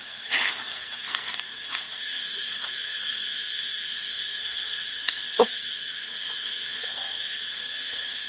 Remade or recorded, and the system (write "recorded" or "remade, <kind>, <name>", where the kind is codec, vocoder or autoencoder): remade, codec, SNAC